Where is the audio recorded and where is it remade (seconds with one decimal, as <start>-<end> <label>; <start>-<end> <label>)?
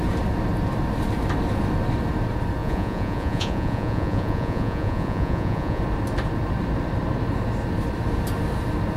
0.0-2.6 recorded; 2.6-5.8 remade; 5.8-9.0 recorded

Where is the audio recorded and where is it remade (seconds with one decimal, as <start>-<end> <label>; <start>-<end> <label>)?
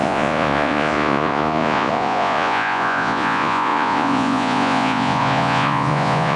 0.0-6.4 remade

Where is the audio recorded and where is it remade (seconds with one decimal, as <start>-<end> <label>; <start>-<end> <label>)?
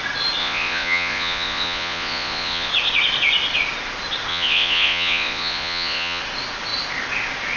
0.0-0.4 recorded; 0.4-2.7 remade; 2.7-4.3 recorded; 4.3-6.2 remade; 6.2-7.6 recorded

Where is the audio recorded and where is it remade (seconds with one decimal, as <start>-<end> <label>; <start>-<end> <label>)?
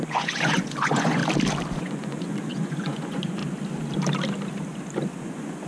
0.0-1.2 remade; 1.2-1.8 recorded; 1.8-3.4 remade; 3.4-5.2 recorded; 5.2-5.7 remade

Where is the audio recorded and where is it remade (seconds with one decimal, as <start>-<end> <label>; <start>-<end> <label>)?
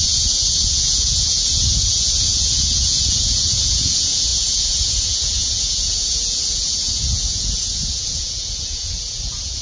0.0-9.6 remade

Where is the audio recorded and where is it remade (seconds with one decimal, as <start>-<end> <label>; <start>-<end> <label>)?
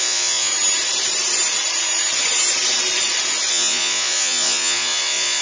0.0-0.5 remade; 0.5-3.5 recorded; 3.5-5.4 remade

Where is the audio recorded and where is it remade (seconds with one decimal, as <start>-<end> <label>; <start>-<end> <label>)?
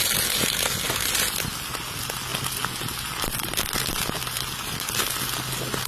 0.0-5.9 recorded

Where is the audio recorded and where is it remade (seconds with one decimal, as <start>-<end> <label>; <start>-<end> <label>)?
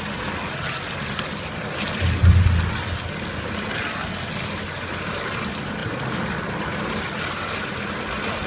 0.0-8.5 recorded